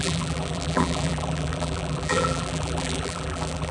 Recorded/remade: remade